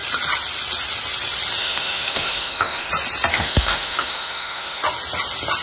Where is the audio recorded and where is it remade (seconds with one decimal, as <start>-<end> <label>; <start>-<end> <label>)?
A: 0.0-1.6 recorded; 1.6-2.9 remade; 2.9-3.3 recorded; 3.3-4.8 remade; 4.8-5.6 recorded